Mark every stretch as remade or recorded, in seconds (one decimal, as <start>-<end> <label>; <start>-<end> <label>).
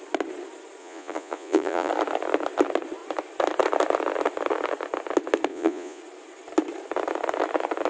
0.0-0.8 recorded; 0.8-1.9 remade; 1.9-5.5 recorded; 5.5-6.0 remade; 6.0-7.9 recorded